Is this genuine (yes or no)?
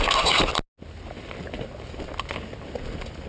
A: yes